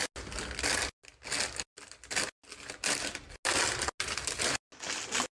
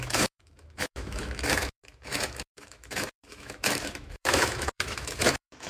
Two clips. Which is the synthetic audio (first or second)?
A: second